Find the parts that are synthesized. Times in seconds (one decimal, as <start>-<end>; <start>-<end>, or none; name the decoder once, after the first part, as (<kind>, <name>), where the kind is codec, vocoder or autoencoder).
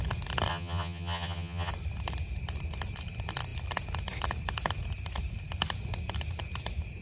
0.5-1.7 (vocoder, HiFi-GAN)